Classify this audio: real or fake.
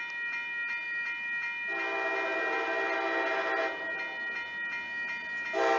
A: real